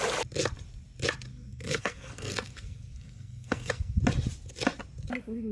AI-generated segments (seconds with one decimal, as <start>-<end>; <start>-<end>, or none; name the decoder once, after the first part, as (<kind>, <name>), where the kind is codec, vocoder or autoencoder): 1.3-4.0 (codec, SNAC)